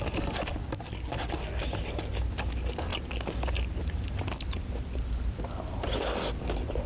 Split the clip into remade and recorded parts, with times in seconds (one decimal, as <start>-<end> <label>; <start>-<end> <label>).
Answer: 0.0-6.9 recorded